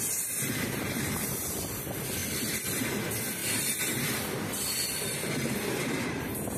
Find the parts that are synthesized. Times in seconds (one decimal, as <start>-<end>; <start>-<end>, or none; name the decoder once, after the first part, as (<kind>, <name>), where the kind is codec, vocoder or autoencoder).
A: 2.2-2.8 (vocoder, BigVGAN v2); 3.4-6.1